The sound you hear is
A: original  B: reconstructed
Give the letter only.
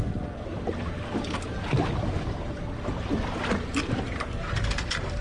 A